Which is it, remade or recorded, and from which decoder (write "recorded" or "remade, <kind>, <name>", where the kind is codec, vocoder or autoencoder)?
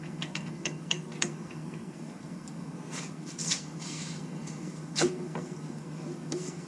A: remade, codec, SNAC